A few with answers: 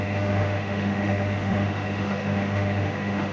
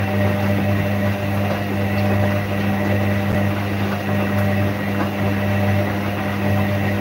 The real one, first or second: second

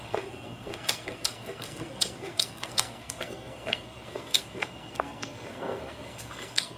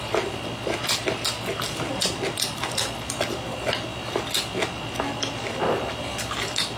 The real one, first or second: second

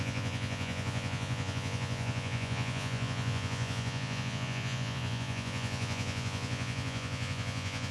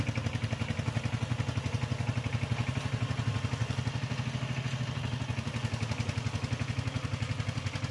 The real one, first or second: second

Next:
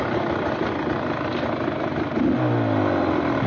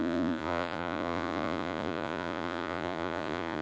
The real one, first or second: first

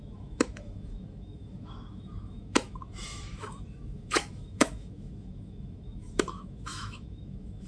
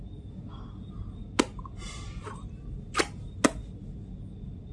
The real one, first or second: second